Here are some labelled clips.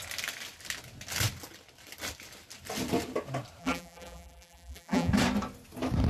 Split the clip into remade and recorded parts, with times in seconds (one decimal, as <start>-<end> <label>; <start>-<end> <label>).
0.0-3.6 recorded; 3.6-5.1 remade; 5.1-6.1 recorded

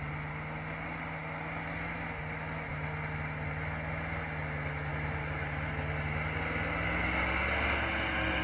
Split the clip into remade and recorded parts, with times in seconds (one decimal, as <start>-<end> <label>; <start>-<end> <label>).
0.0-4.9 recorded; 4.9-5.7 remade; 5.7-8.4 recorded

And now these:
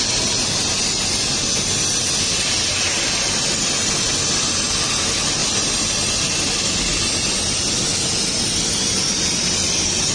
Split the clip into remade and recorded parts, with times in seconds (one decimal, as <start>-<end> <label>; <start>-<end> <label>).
0.0-5.4 recorded; 5.4-6.1 remade; 6.1-10.1 recorded